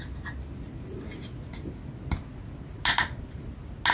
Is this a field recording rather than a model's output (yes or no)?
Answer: yes